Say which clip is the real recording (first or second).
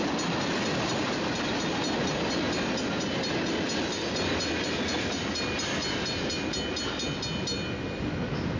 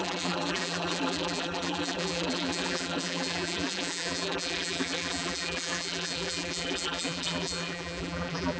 first